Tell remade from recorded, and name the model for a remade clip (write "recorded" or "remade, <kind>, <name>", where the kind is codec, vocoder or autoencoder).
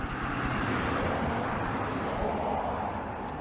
recorded